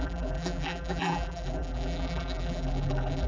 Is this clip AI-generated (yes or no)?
yes